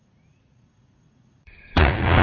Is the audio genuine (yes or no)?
no